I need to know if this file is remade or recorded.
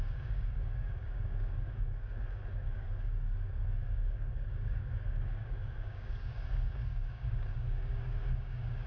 remade